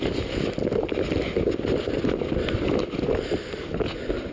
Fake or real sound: real